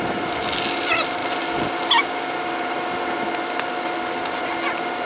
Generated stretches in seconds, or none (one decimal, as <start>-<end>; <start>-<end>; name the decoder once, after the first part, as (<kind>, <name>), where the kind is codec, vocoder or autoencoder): none